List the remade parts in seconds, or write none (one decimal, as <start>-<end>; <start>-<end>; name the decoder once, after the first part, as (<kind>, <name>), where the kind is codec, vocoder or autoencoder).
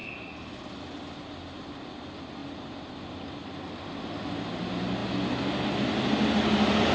none